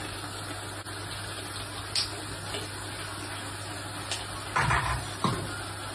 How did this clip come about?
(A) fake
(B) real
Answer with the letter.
B